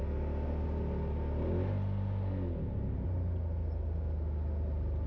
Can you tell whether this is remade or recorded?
recorded